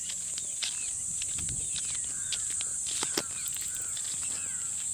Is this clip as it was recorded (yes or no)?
no